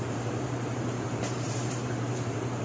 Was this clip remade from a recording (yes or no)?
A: yes